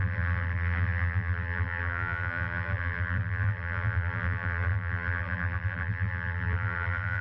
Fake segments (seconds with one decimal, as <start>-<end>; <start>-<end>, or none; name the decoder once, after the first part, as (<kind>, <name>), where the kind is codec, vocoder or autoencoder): 0.0-7.2 (vocoder, BigVGAN v2)